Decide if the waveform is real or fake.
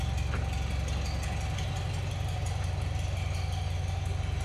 real